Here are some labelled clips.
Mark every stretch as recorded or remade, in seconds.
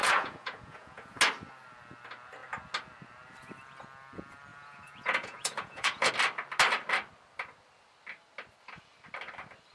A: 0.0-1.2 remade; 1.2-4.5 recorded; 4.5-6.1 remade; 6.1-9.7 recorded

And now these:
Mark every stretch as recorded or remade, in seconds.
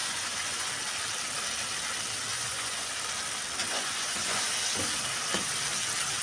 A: 0.0-0.7 remade; 0.7-2.3 recorded; 2.3-2.9 remade; 2.9-3.6 recorded; 3.6-4.5 remade; 4.5-6.2 recorded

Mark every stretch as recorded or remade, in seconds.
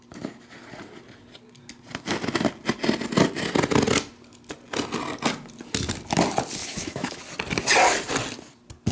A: 0.0-6.6 recorded; 6.6-7.2 remade; 7.2-8.9 recorded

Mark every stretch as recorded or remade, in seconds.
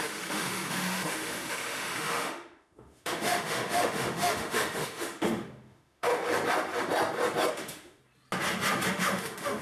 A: 0.0-6.1 remade; 6.1-7.5 recorded; 7.5-8.0 remade; 8.0-8.9 recorded; 8.9-9.6 remade